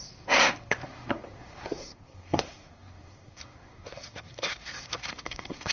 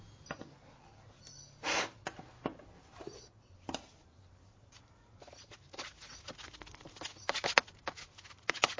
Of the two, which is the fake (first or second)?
first